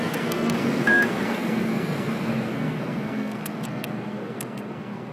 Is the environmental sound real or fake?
fake